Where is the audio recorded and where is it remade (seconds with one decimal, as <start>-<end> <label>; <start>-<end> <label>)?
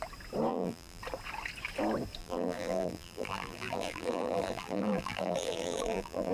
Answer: 0.0-0.5 recorded; 0.5-1.0 remade; 1.0-2.2 recorded; 2.2-6.3 remade